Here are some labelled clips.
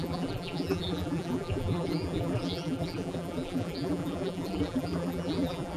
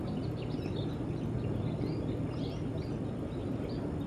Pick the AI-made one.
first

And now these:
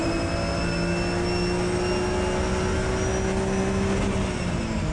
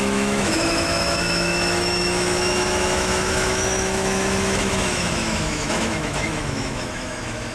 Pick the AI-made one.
second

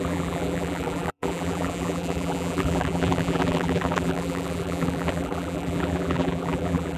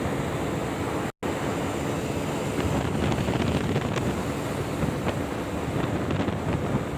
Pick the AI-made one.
first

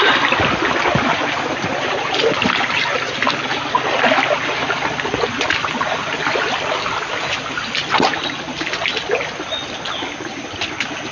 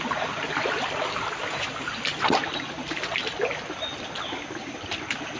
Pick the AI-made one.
second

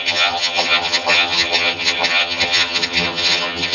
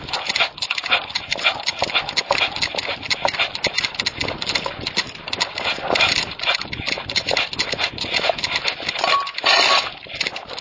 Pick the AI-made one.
first